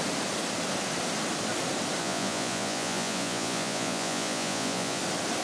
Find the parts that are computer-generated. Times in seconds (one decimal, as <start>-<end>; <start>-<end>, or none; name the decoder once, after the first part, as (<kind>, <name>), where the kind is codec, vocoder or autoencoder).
2.0-5.0 (vocoder, Vocos)